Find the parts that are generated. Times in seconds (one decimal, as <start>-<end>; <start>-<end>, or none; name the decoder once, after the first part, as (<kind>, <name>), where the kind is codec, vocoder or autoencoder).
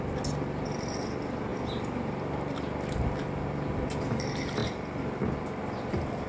none